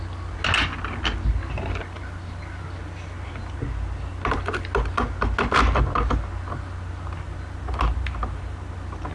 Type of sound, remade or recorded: recorded